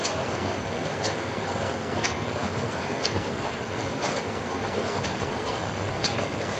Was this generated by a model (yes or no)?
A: yes